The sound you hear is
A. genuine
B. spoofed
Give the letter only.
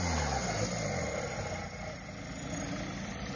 A